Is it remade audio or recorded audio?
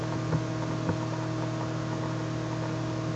recorded